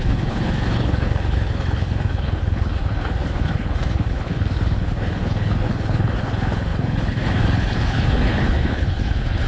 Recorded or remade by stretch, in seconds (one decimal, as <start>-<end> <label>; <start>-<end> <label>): 0.0-9.5 remade

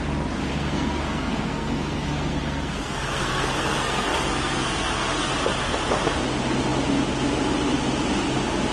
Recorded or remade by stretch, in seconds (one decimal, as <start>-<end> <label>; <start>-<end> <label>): 0.0-0.5 recorded; 0.5-5.3 remade; 5.3-8.7 recorded

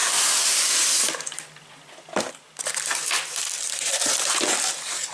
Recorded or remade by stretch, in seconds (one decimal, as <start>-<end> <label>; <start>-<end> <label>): 0.0-5.1 recorded

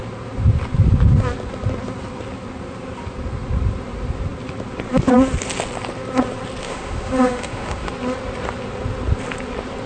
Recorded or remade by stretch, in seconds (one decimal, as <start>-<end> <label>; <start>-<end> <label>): 0.0-6.6 recorded; 6.6-7.9 remade; 7.9-9.9 recorded

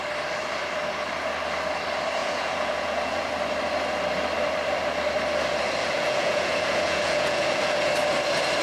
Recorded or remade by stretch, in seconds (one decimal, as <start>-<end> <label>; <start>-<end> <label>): 0.0-2.2 recorded; 2.2-3.3 remade; 3.3-5.8 recorded; 5.8-7.9 remade; 7.9-8.6 recorded

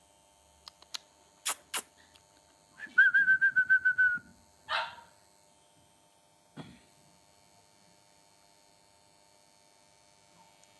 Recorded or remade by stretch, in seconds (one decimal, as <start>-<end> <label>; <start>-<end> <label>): 0.0-10.8 recorded